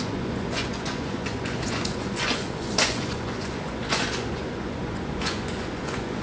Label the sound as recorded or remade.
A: remade